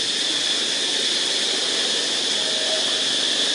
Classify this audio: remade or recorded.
recorded